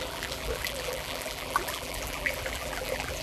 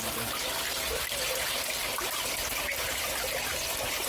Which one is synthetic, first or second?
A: first